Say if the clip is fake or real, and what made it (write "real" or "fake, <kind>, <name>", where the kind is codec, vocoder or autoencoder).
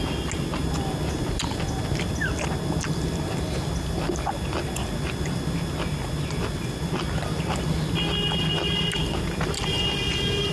real